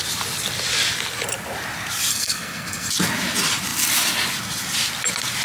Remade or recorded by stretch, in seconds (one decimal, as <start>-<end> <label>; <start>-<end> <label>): 0.0-2.1 recorded; 2.1-2.9 remade; 2.9-5.4 recorded

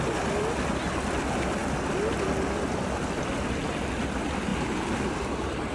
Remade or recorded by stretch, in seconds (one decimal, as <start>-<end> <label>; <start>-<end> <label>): 0.0-5.7 recorded

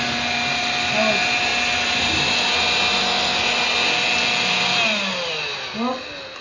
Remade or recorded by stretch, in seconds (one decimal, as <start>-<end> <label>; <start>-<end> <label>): 0.0-6.4 recorded

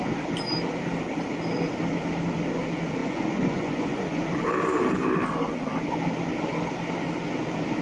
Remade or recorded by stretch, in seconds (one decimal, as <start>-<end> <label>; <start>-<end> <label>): 0.0-3.0 recorded; 3.0-4.4 remade; 4.4-7.8 recorded